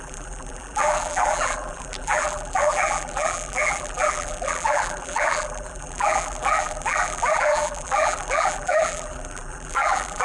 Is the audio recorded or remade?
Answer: remade